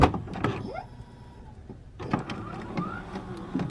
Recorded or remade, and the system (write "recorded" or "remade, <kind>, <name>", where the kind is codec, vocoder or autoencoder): recorded